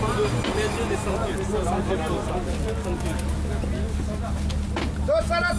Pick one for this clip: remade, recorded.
recorded